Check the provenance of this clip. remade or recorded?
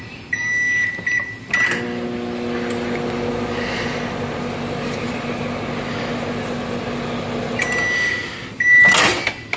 recorded